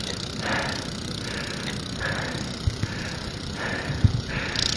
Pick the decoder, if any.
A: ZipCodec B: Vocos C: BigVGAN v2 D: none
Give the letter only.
D